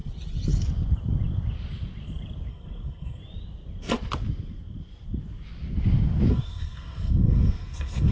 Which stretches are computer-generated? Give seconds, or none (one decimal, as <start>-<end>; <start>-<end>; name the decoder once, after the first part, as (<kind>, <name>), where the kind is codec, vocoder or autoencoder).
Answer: 2.5-3.2 (codec, SNAC); 6.3-8.1